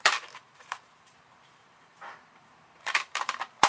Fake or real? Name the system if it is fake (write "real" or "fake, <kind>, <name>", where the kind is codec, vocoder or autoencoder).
fake, vocoder, BigVGAN v2